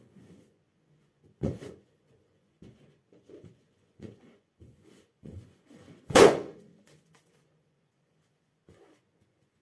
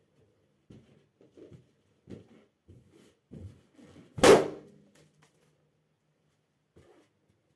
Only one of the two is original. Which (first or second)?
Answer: second